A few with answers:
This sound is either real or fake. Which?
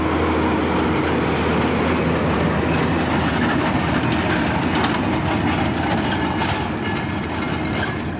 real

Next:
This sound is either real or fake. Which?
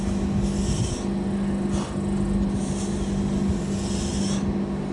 real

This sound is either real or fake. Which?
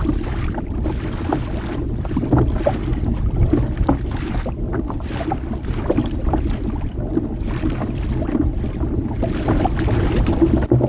real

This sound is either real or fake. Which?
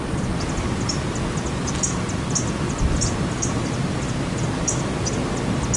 real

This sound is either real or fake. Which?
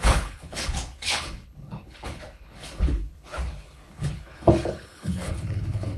fake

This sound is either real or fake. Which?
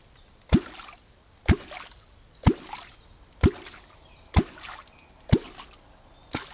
real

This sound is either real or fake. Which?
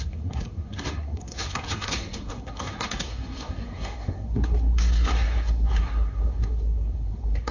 fake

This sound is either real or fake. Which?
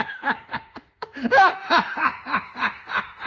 fake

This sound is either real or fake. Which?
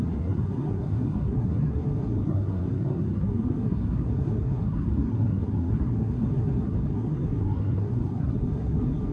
fake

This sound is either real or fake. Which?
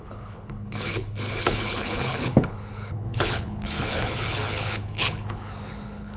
fake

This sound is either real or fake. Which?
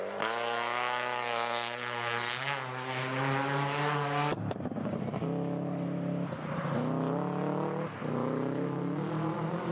real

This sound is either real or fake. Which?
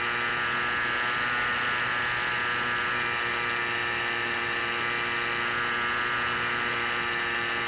real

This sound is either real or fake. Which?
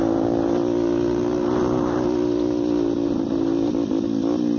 real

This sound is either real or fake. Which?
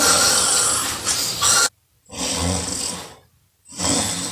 real